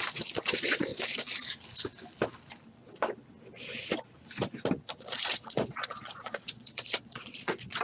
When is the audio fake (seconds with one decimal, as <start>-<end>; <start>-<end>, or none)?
0.0-0.9; 5.0-7.8